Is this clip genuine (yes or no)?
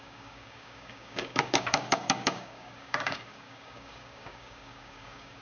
no